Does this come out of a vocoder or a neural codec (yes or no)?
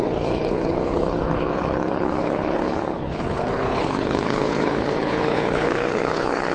yes